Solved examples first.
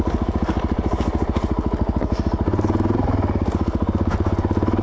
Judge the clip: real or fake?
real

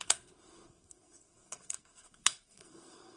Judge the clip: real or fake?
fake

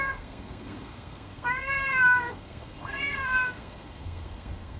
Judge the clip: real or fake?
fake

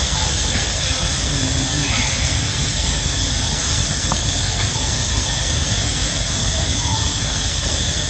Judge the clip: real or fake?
fake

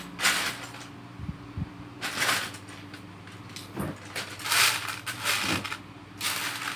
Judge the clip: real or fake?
real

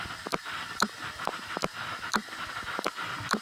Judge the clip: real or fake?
real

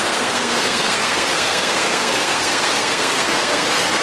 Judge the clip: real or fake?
fake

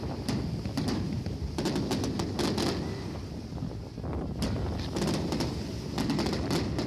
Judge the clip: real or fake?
real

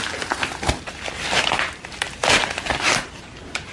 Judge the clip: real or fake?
real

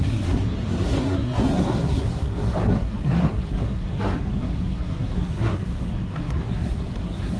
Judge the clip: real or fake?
fake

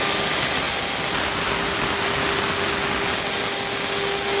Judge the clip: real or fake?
real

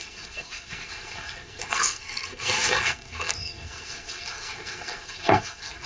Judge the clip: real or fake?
fake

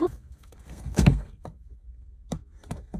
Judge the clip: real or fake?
fake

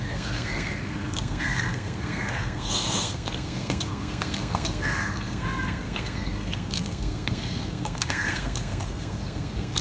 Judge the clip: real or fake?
fake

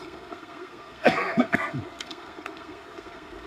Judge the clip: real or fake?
fake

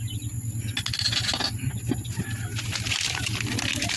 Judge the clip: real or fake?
real